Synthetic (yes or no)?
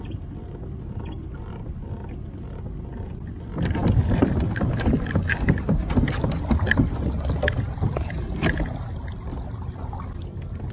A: no